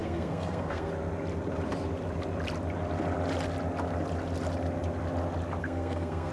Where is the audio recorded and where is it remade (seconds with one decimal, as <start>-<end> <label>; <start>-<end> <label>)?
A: 0.0-0.9 remade; 0.9-5.6 recorded; 5.6-6.3 remade